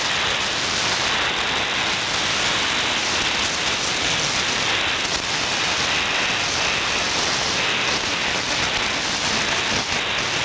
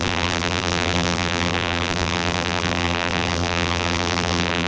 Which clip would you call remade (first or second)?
second